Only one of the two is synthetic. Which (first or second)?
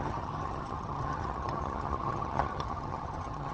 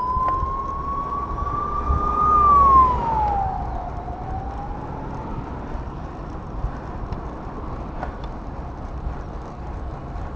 first